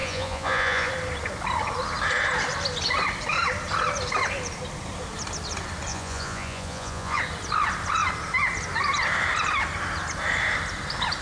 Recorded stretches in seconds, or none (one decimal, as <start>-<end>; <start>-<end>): 0.9-5.9; 7.2-11.2